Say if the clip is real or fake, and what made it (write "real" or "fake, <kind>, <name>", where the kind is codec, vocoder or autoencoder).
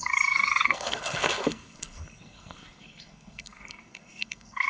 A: fake, codec, SNAC